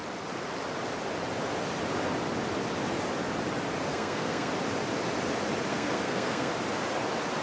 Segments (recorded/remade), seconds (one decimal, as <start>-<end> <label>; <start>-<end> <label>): 0.0-3.9 recorded; 3.9-4.5 remade; 4.5-5.7 recorded; 5.7-6.5 remade; 6.5-7.4 recorded